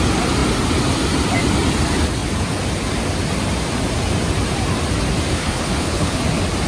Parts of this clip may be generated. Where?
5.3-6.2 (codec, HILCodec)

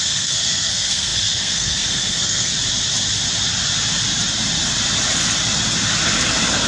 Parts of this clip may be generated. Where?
0.0-2.5 (codec, SNAC)

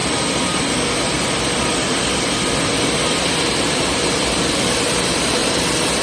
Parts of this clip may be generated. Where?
3.6-5.4 (vocoder, BigVGAN v2)

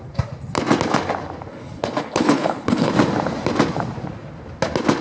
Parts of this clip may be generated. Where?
1.5-2.9 (codec, HILCodec)

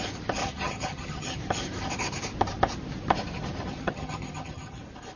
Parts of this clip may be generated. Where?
0.4-1.4 (vocoder, HiFi-GAN); 3.7-4.8